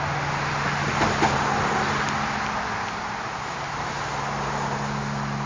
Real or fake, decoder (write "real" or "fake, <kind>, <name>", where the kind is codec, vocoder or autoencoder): real